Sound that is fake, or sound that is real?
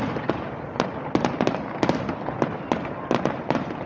real